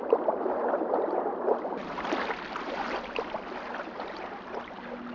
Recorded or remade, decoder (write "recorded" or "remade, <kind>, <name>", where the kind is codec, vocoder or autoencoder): recorded